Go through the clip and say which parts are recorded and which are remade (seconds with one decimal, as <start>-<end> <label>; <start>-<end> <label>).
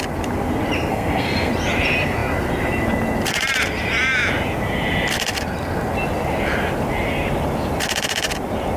0.0-0.9 recorded; 0.9-1.5 remade; 1.5-8.8 recorded